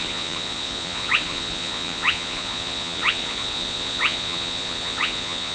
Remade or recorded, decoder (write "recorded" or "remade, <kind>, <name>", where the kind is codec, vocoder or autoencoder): remade, vocoder, Vocos